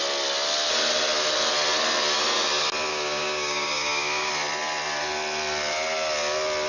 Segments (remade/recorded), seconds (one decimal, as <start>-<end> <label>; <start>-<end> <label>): 0.0-2.9 recorded; 2.9-4.3 remade; 4.3-6.7 recorded